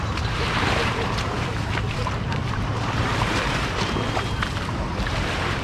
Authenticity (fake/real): fake